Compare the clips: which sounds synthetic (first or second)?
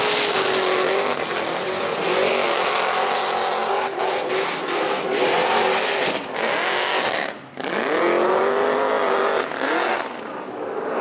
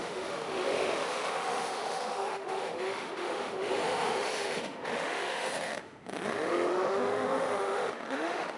second